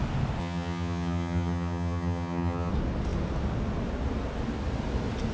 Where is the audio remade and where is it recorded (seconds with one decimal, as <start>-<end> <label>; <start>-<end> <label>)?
0.0-0.4 recorded; 0.4-2.7 remade; 2.7-5.3 recorded